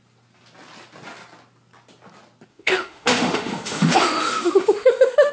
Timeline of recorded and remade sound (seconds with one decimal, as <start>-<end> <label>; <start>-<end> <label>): 0.0-2.5 recorded; 2.5-5.3 remade